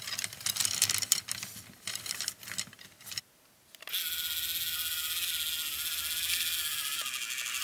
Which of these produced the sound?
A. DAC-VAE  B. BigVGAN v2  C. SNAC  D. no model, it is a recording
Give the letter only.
D